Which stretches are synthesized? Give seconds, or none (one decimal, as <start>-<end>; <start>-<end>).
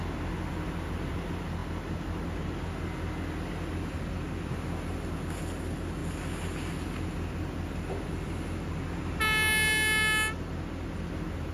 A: none